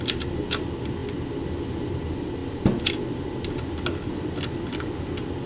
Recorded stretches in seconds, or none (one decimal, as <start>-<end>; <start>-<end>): 0.0-5.5